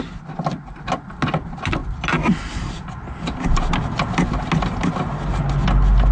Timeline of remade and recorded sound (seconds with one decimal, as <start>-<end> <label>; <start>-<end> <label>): 0.0-6.1 recorded